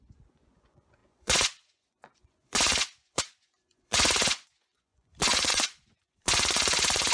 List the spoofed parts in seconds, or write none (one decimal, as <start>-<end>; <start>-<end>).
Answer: 0.0-7.1